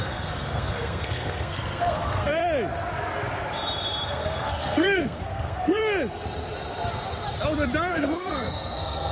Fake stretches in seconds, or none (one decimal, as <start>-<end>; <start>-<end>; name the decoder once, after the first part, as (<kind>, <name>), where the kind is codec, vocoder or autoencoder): 0.0-2.4 (codec, SNAC); 4.1-5.8; 7.9-9.1